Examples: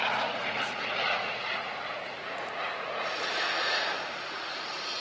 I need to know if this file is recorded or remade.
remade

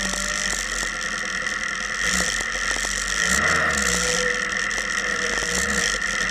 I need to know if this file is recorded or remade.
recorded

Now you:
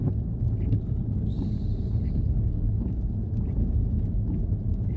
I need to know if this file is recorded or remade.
recorded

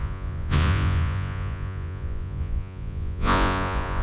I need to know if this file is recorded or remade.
remade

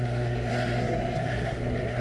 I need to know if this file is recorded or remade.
remade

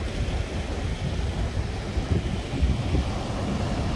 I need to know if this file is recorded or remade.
recorded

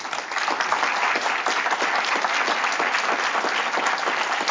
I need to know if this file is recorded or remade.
recorded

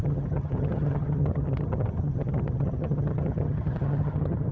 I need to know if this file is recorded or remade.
remade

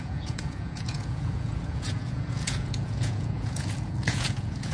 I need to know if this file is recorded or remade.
remade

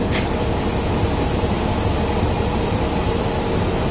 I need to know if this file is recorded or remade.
recorded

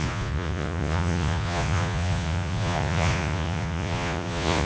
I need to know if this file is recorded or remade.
remade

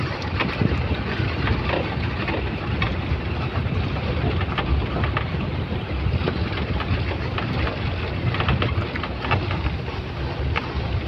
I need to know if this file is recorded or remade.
recorded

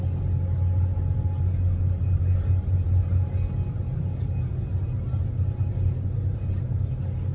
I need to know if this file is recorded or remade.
recorded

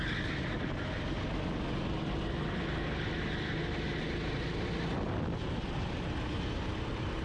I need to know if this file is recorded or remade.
recorded